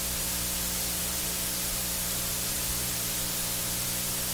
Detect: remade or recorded remade